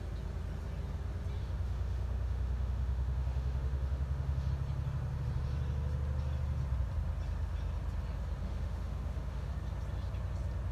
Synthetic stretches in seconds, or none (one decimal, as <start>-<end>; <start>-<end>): 1.4-4.5; 8.4-9.5